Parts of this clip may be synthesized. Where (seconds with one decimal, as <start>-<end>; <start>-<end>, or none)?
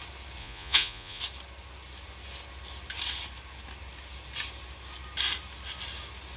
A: 0.4-1.2